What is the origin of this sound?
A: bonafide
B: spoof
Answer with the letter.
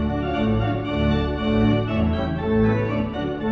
A